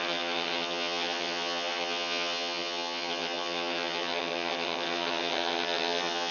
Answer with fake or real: fake